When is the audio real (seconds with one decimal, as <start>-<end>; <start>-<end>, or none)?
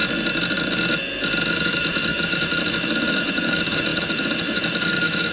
0.0-1.5